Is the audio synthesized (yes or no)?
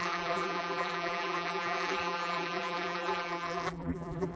yes